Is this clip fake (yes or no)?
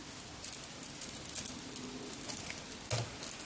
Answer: no